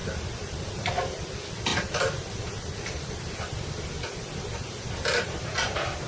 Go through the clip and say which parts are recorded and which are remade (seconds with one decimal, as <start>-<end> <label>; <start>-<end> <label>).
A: 0.0-1.2 remade; 1.2-1.7 recorded; 1.7-5.4 remade; 5.4-6.1 recorded